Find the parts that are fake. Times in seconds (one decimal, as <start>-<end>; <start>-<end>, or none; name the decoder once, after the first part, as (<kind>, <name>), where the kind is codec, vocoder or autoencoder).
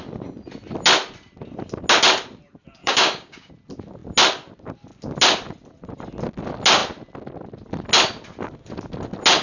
2.8-3.5 (codec, DAC)